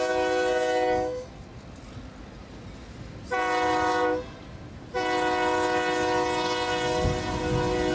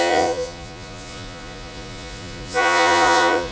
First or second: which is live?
first